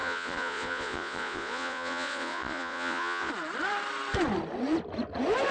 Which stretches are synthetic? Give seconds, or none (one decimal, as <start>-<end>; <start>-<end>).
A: 0.0-3.3